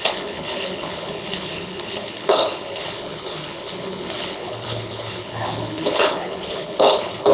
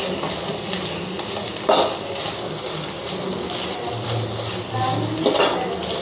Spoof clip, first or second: first